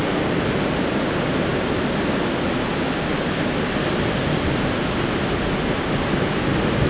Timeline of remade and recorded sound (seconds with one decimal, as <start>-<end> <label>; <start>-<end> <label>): 0.0-6.9 recorded